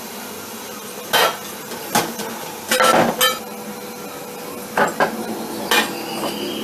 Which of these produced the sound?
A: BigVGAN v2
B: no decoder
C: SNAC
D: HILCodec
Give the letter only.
B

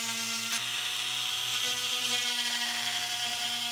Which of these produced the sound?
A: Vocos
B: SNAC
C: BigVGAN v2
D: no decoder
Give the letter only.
D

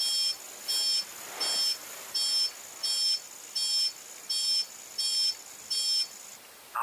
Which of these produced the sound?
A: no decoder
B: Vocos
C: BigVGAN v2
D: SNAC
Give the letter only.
A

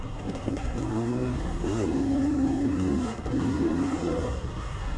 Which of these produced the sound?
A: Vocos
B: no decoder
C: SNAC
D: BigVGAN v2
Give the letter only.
C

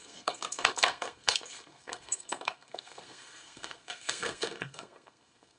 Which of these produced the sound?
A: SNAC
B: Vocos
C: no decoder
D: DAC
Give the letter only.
A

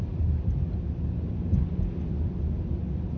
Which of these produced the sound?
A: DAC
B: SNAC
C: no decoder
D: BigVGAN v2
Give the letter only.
C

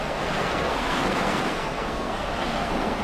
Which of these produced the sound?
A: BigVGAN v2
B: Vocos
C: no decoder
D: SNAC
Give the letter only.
D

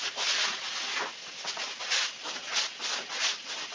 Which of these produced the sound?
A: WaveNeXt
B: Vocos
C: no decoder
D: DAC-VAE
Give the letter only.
C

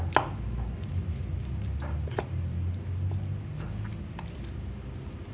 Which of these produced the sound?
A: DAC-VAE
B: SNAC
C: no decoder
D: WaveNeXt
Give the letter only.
C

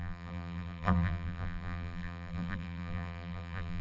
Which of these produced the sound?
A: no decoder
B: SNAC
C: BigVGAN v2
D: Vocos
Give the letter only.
C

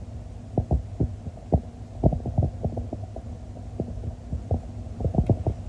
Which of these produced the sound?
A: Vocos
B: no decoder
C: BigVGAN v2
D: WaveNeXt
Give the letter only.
B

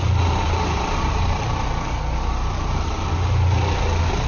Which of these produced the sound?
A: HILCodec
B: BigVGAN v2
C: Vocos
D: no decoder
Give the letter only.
B